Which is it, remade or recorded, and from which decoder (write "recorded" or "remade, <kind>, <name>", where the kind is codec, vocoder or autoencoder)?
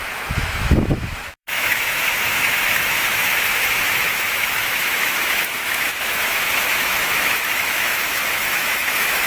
remade, autoencoder, DAC-VAE